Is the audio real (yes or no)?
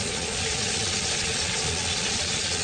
no